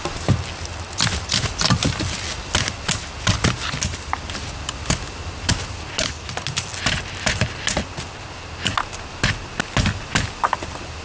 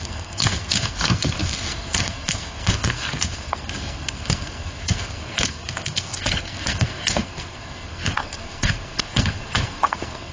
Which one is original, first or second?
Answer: first